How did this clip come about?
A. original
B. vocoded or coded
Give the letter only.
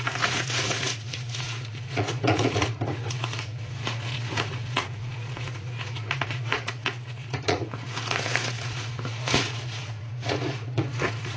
B